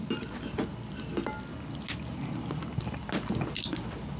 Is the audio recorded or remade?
recorded